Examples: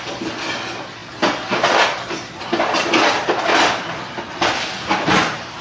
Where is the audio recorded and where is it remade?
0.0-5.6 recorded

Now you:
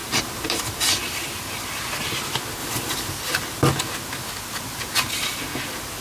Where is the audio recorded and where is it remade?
0.0-1.5 remade; 1.5-2.6 recorded; 2.6-3.1 remade; 3.1-6.0 recorded

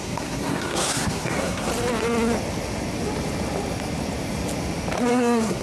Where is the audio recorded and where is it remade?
0.0-1.7 remade; 1.7-5.1 recorded; 5.1-5.6 remade

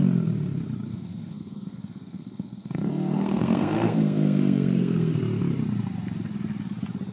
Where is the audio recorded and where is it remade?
0.0-0.9 recorded; 0.9-5.2 remade; 5.2-7.1 recorded

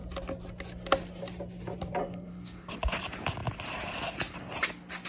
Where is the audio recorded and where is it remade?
0.0-2.0 recorded; 2.0-2.7 remade; 2.7-5.1 recorded